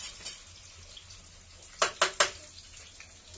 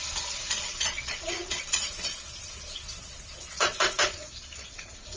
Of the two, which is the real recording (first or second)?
first